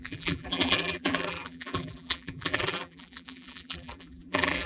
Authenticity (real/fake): fake